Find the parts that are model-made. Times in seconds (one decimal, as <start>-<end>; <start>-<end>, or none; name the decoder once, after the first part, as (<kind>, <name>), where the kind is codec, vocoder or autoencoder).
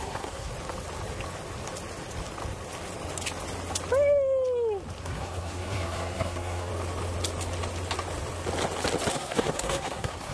0.0-0.5 (codec, SNAC); 5.0-6.7; 9.1-10.3